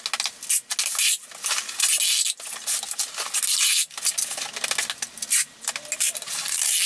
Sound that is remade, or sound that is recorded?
recorded